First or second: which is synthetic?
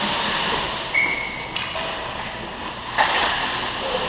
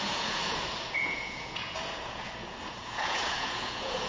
second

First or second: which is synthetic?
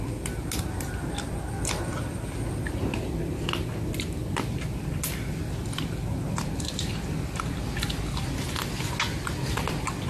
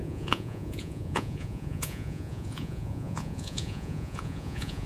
second